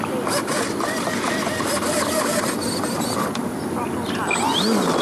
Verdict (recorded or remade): recorded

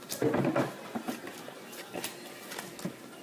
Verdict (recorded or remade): recorded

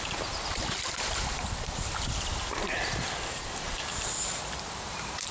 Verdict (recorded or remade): remade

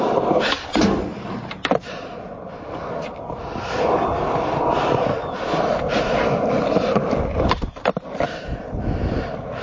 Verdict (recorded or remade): remade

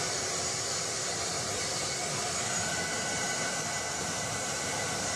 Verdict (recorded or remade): remade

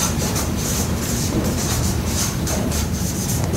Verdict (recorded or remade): remade